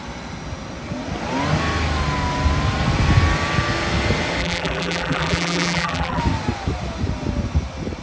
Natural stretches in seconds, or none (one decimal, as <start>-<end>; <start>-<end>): 0.0-4.4; 6.2-8.0